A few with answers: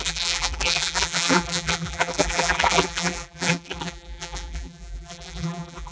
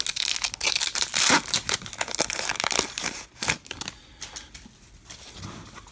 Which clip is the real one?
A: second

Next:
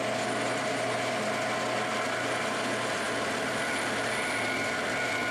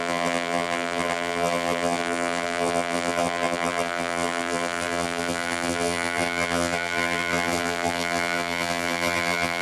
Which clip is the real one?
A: first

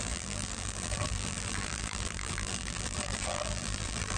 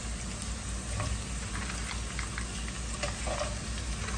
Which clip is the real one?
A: second